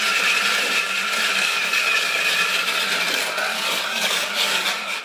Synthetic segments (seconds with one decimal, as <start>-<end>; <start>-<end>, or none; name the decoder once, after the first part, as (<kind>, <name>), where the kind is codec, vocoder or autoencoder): 1.3-2.1 (codec, DAC); 3.5-5.0